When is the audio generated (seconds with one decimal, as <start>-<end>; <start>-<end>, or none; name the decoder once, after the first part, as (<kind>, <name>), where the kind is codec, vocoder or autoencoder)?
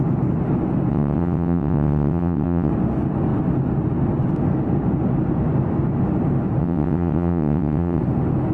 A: 0.9-2.7 (vocoder, WaveNeXt); 6.6-8.0